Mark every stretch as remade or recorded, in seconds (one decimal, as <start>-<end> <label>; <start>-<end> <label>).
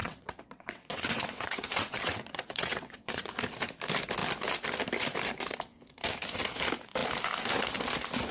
0.0-3.3 remade; 3.3-8.3 recorded